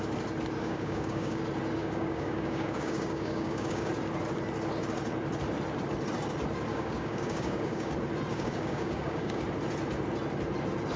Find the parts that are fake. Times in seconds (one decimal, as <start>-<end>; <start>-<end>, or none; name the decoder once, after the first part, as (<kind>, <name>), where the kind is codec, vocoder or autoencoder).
0.6-1.4 (codec, DAC); 1.8-3.9; 6.7-7.9; 8.3-9.4

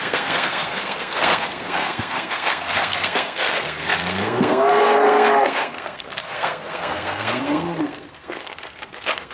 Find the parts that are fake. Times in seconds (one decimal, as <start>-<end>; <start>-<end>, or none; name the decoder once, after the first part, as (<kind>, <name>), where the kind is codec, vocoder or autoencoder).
0.0-9.3 (codec, SNAC)

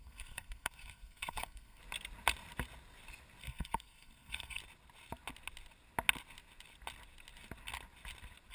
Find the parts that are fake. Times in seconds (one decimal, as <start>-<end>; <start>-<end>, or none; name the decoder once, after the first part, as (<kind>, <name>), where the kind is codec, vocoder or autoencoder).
0.0-1.8 (codec, SNAC); 3.4-4.6

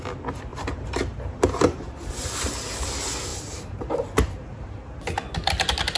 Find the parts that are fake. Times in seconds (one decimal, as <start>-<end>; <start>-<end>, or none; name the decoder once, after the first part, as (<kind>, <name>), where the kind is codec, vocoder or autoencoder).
0.5-2.1 (vocoder, BigVGAN v2); 3.3-5.0